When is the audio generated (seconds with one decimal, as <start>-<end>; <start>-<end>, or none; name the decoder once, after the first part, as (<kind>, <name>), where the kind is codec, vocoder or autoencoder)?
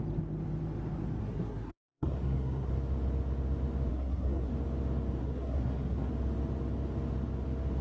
1.2-2.7 (codec, SNAC); 3.9-4.5; 5.2-6.1